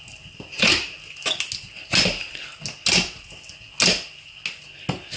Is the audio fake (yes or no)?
no